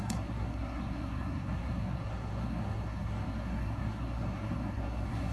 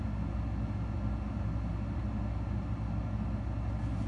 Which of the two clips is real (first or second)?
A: second